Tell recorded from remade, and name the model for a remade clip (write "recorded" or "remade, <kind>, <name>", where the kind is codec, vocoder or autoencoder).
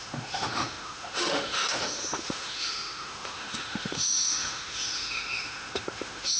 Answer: remade, autoencoder, DAC-VAE